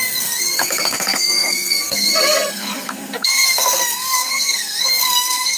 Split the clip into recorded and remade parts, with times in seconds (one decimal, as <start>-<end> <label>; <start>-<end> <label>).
0.0-5.6 remade